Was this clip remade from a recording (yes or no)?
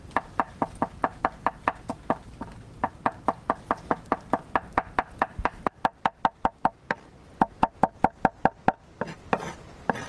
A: no